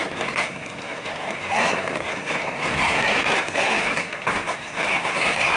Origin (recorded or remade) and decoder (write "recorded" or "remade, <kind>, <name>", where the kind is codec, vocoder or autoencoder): remade, codec, SNAC